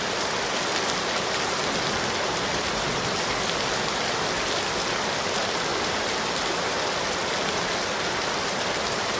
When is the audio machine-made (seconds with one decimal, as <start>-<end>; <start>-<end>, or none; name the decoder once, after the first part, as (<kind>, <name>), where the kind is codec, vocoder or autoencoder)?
none